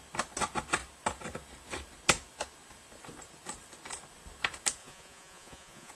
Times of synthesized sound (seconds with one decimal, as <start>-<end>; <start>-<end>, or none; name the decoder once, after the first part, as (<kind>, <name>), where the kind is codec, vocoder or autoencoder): 4.8-5.9 (vocoder, Vocos)